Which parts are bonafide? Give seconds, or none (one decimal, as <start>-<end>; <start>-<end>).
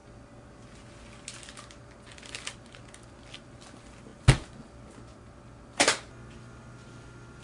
0.0-7.4